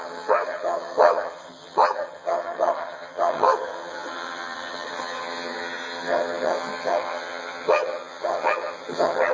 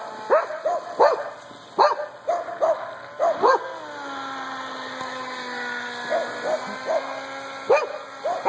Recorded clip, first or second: second